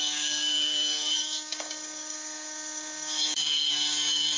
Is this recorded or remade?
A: remade